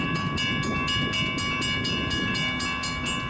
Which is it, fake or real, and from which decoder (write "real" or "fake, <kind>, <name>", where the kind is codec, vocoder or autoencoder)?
real